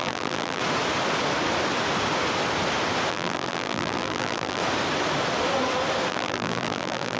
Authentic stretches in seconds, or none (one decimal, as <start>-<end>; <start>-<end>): 0.6-3.1; 4.6-6.1